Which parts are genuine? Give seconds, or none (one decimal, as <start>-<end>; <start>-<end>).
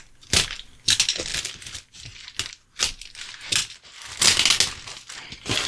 0.0-5.7